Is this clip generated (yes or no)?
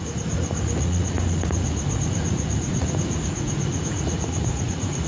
yes